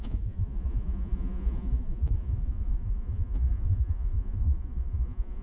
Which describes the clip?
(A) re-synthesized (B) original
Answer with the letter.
A